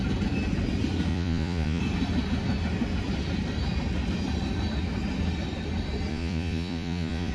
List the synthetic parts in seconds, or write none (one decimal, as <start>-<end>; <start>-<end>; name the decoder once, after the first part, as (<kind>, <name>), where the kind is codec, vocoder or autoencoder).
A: 1.1-1.8 (vocoder, Vocos); 6.1-7.3